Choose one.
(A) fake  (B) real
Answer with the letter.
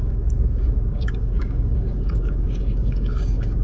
A